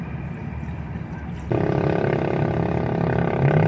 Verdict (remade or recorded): recorded